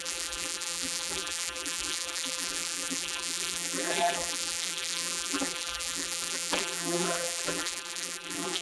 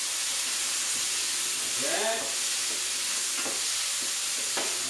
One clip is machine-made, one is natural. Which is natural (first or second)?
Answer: second